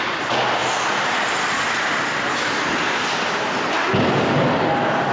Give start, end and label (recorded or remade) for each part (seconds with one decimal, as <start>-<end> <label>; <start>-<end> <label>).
0.0-5.1 recorded